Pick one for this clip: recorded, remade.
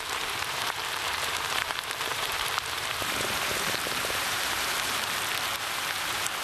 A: remade